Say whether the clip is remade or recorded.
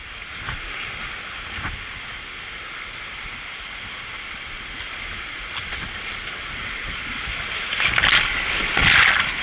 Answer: recorded